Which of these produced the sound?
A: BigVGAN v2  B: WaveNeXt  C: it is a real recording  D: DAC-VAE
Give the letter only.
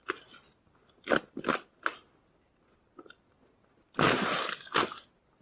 C